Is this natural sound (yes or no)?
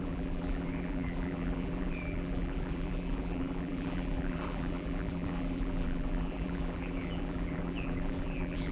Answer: no